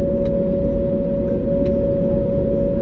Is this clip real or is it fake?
real